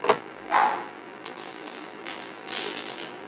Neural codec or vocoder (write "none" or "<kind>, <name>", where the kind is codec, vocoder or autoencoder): vocoder, BigVGAN v2